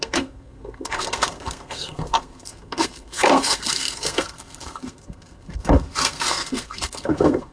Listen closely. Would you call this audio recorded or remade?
remade